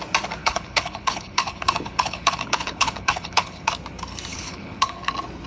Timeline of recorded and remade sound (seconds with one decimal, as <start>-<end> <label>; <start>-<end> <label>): 0.0-0.4 recorded; 0.4-3.7 remade; 3.7-4.3 recorded; 4.3-5.1 remade; 5.1-5.5 recorded